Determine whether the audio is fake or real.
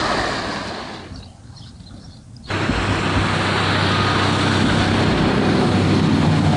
real